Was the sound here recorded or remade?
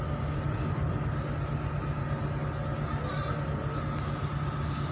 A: recorded